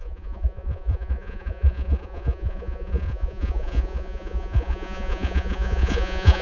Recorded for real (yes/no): no